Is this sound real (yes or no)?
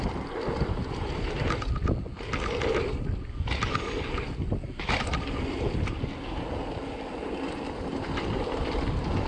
yes